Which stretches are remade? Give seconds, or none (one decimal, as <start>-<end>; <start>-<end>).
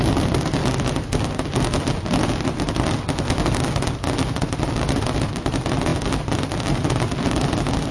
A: none